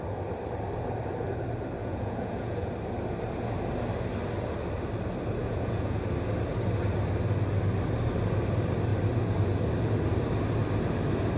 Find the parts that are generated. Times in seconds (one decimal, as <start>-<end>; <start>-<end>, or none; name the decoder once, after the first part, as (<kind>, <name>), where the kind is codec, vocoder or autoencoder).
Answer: 1.8-2.7 (vocoder, Vocos); 5.4-6.0